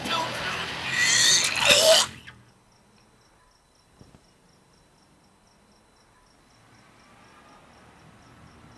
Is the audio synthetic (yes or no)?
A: no